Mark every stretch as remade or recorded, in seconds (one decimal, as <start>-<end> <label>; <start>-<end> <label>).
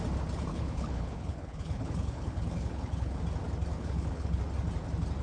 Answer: 0.0-0.5 recorded; 0.5-3.2 remade; 3.2-3.7 recorded; 3.7-4.4 remade; 4.4-5.2 recorded